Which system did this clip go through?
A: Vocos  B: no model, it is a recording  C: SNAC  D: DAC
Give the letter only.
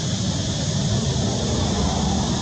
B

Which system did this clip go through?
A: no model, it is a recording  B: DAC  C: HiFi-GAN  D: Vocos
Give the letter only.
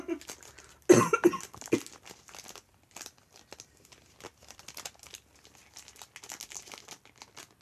A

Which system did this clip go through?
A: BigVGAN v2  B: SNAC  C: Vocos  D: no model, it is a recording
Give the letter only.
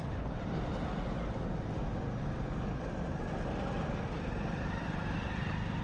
D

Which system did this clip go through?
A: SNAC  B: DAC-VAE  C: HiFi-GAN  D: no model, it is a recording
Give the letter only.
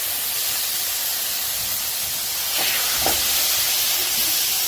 D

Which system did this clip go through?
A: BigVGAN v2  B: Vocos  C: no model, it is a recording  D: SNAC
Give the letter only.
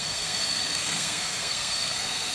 D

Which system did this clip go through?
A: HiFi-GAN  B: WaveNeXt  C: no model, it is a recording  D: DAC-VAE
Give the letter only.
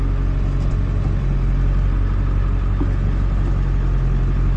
C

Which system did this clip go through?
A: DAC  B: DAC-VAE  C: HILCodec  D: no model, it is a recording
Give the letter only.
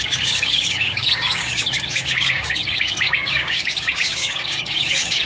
A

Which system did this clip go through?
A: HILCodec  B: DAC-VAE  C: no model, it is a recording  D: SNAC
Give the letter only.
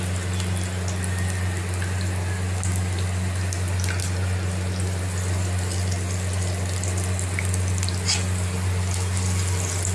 C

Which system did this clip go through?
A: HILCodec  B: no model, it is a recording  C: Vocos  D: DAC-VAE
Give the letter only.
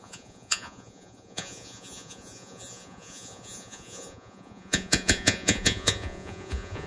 C